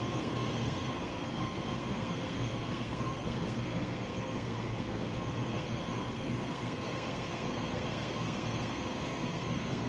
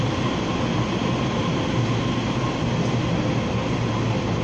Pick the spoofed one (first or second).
first